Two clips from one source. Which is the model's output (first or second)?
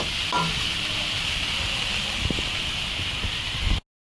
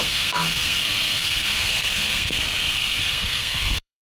second